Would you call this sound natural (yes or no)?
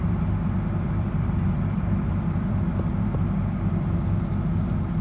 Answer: no